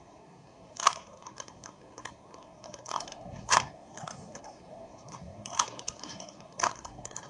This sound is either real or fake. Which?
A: fake